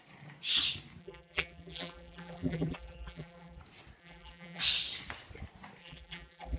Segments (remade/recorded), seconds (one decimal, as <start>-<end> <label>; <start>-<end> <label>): 0.0-1.0 recorded; 1.0-3.6 remade; 3.6-4.0 recorded; 4.0-4.6 remade; 4.6-5.8 recorded; 5.8-6.6 remade